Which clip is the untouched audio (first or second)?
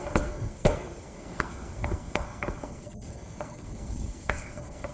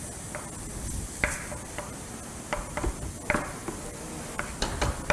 second